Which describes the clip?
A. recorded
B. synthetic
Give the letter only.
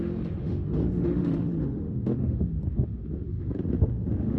B